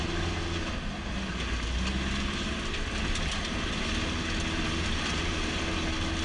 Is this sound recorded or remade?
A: recorded